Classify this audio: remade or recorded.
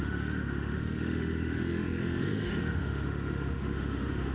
remade